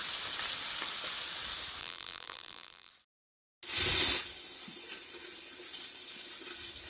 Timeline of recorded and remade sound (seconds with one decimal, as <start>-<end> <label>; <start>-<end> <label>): 0.0-1.8 recorded; 1.8-2.9 remade; 2.9-6.9 recorded